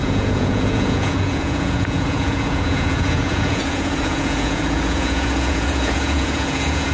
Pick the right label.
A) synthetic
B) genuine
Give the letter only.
A